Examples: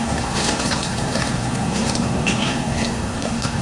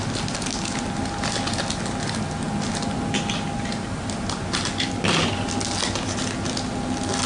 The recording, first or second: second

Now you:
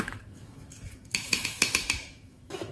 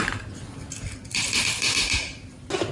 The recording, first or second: second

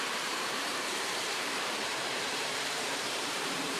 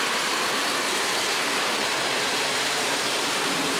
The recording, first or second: second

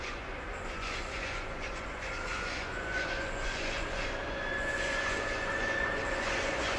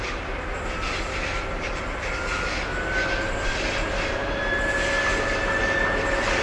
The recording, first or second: second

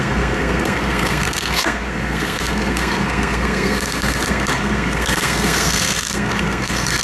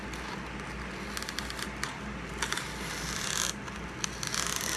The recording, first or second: second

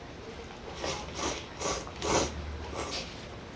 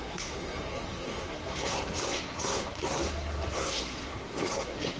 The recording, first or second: first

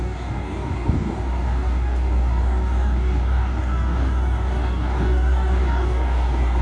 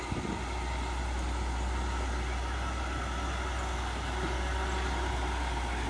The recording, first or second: second